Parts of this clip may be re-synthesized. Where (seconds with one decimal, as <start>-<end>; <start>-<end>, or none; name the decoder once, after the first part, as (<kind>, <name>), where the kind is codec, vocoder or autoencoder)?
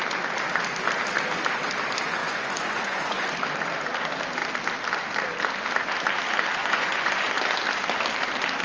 2.2-3.3 (vocoder, Vocos); 6.6-7.3